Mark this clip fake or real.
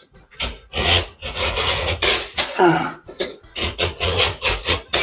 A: fake